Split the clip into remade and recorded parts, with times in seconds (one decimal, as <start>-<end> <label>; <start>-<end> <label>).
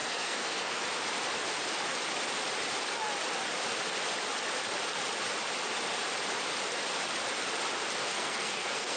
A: 0.0-0.8 remade; 0.8-8.0 recorded; 8.0-9.0 remade